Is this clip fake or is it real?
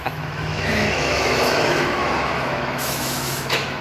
fake